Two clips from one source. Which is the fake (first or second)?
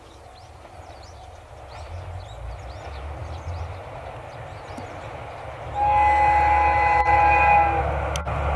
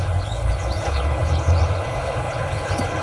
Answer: second